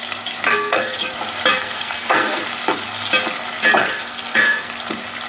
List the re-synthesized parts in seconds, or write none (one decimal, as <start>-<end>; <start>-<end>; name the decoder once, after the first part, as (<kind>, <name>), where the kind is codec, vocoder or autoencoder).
0.5-1.1 (codec, SNAC); 1.5-2.4; 3.8-4.7